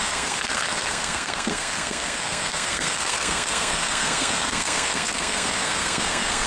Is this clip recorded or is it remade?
remade